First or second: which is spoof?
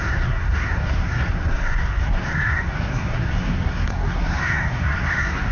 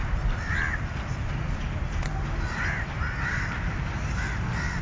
first